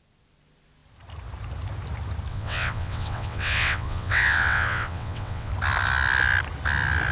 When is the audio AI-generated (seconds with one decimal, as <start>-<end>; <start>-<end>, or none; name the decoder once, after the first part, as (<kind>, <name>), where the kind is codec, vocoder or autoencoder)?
2.3-5.5 (vocoder, WaveNeXt)